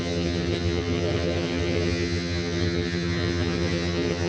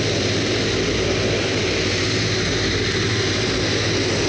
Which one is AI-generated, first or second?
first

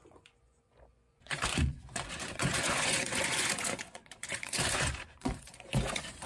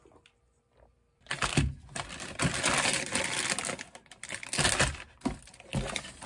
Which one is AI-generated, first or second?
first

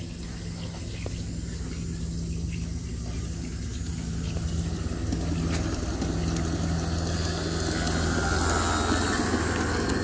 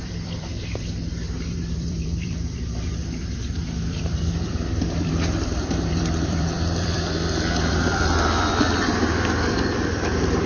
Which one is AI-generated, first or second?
second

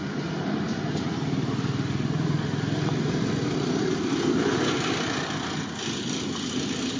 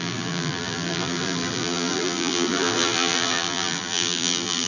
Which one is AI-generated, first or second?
second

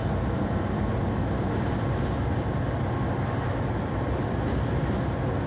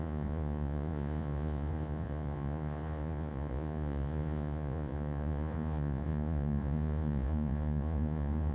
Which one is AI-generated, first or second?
second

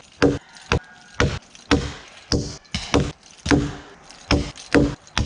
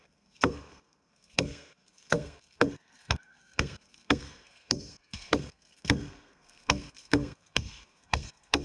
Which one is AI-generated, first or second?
second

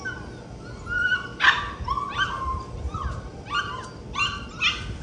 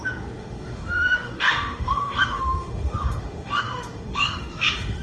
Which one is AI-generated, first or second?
second